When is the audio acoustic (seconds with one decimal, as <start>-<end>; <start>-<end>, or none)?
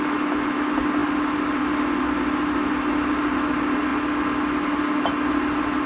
0.0-5.9